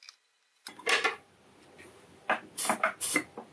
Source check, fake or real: real